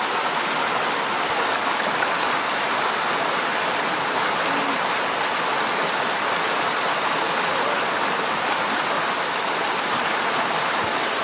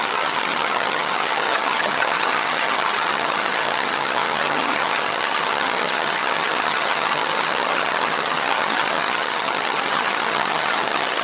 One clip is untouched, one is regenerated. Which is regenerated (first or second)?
second